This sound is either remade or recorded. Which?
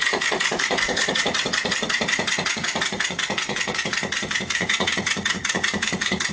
remade